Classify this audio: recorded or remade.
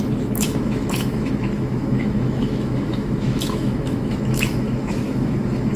remade